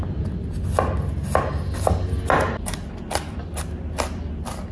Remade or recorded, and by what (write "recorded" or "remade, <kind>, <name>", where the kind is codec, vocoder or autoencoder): recorded